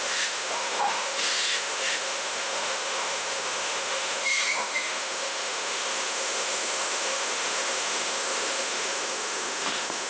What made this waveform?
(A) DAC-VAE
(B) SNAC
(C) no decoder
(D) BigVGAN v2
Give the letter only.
A